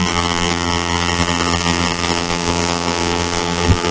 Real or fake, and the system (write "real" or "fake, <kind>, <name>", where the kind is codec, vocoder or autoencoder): fake, vocoder, BigVGAN v2